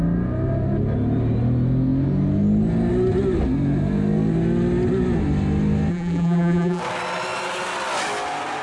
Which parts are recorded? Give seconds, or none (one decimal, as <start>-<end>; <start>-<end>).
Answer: 0.0-5.9; 6.8-8.6